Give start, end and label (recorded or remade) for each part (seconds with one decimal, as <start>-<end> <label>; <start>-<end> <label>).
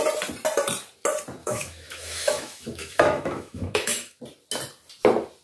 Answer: 0.0-1.4 recorded; 1.4-4.2 remade; 4.2-5.4 recorded